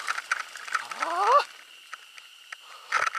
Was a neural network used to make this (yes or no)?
no